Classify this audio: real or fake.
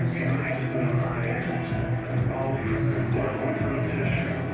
real